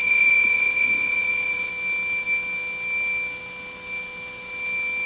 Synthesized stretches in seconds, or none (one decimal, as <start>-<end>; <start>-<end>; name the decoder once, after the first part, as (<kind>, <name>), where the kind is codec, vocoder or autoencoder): 0.0-1.7 (vocoder, Vocos)